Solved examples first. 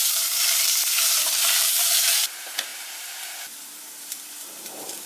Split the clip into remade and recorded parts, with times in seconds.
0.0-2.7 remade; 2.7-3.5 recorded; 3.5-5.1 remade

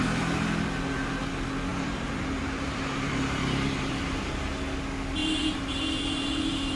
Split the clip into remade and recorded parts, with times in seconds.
0.0-1.7 recorded; 1.7-4.5 remade; 4.5-5.2 recorded; 5.2-6.8 remade

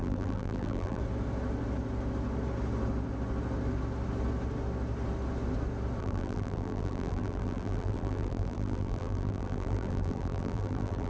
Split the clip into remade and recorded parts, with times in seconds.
0.0-1.0 remade; 1.0-6.0 recorded; 6.0-11.1 remade

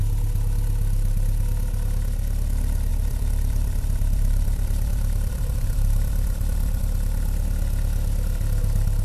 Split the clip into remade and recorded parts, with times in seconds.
0.0-2.9 recorded; 2.9-6.8 remade; 6.8-9.0 recorded

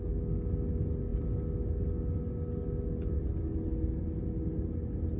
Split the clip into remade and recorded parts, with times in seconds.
0.0-5.2 recorded

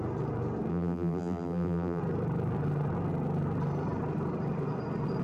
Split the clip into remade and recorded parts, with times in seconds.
0.0-0.7 recorded; 0.7-2.0 remade; 2.0-5.2 recorded

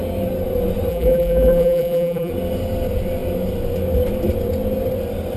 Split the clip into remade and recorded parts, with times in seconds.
0.0-0.9 recorded; 0.9-2.3 remade; 2.3-5.4 recorded

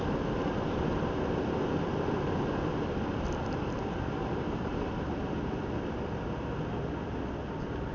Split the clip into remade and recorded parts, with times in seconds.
0.0-3.4 recorded; 3.4-5.2 remade; 5.2-7.9 recorded